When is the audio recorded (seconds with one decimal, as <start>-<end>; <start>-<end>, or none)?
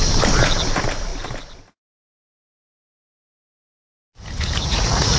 0.0-4.6